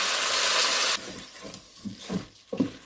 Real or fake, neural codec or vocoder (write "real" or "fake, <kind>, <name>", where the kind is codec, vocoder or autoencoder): real